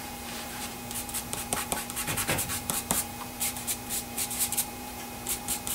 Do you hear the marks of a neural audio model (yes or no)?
yes